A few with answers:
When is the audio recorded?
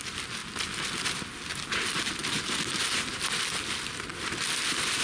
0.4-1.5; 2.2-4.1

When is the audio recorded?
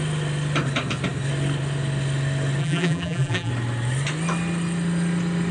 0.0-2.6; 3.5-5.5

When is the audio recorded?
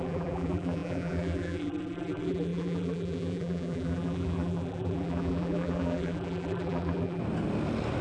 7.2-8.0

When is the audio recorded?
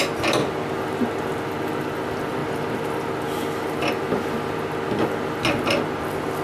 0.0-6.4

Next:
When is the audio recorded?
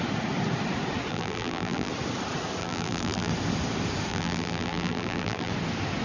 0.0-1.1; 1.9-2.6; 3.3-4.1; 5.5-6.0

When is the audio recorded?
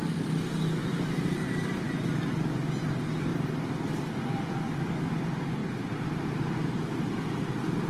0.0-0.9; 1.9-3.3; 4.1-5.6; 6.6-7.9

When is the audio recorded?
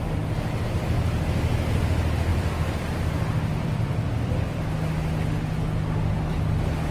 0.0-2.3; 4.1-6.9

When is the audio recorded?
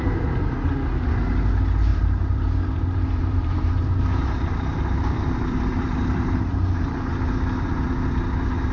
0.0-1.9; 7.1-8.7